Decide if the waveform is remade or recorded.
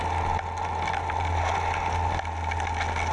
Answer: recorded